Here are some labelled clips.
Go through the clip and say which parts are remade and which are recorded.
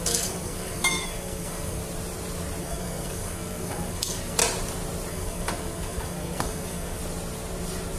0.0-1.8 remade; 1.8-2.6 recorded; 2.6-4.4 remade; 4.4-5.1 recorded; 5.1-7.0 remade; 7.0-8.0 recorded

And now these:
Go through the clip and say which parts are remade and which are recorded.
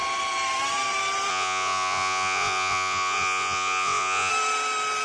0.0-1.3 recorded; 1.3-4.3 remade; 4.3-5.0 recorded